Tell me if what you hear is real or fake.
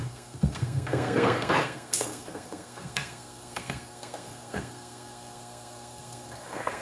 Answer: fake